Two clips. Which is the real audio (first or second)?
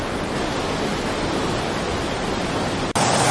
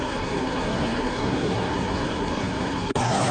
first